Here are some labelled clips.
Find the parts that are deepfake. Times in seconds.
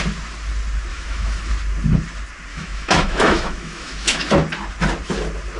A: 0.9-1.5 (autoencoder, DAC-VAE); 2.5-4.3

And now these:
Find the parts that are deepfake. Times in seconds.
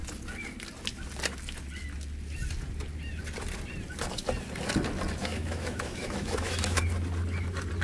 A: 5.2-6.8 (autoencoder, DAC-VAE)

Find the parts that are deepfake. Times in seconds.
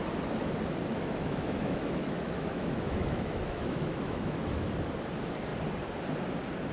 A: 0.9-4.9 (autoencoder, DAC-VAE)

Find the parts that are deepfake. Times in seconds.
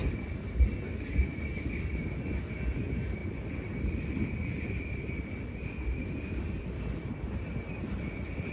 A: none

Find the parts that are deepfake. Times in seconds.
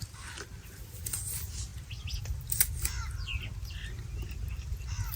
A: none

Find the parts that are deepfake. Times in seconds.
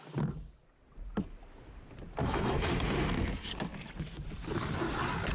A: 2.2-2.7 (autoencoder, DAC-VAE)